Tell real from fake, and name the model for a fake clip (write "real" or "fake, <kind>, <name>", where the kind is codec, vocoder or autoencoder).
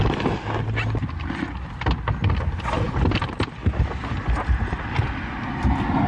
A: real